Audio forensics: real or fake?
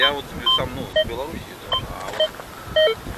real